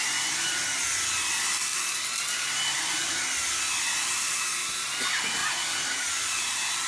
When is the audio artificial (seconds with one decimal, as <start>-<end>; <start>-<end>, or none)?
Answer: 1.7-3.8; 5.4-6.9